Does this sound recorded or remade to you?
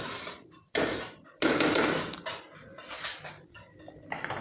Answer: remade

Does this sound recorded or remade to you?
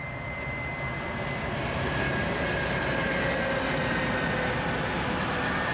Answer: recorded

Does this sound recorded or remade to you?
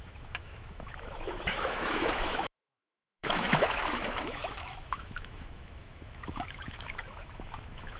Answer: remade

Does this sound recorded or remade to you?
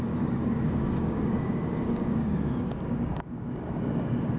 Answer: remade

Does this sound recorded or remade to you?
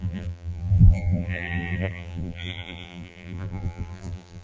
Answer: remade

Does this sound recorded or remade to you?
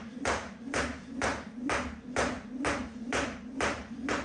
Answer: recorded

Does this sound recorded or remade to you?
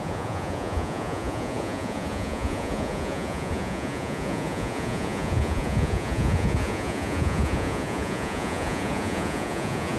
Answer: remade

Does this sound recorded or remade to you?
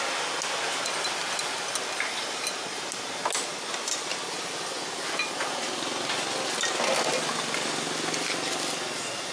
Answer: recorded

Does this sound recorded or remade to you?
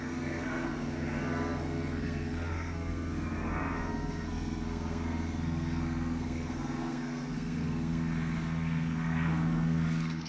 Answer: remade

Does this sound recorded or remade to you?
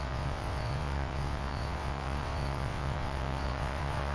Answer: remade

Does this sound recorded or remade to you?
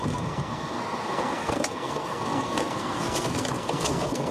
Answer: remade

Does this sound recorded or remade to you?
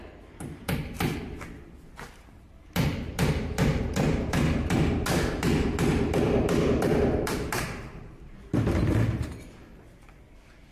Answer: remade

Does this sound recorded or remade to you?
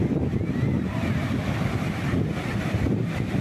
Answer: recorded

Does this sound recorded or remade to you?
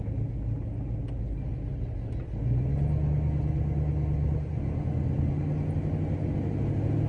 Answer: recorded